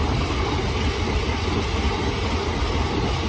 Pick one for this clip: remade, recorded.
recorded